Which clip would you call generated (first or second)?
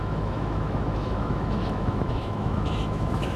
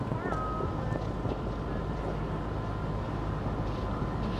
first